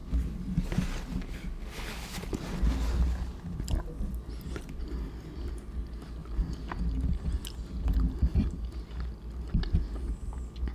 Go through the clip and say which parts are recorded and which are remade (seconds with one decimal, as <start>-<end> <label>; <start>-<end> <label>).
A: 0.0-10.7 recorded